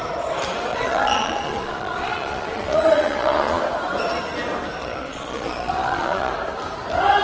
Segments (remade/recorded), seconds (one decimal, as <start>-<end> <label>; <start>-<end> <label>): 0.0-0.7 recorded; 0.7-3.6 remade; 3.6-4.8 recorded; 4.8-6.3 remade; 6.3-7.2 recorded